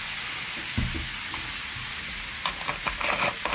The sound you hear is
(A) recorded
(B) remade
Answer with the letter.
A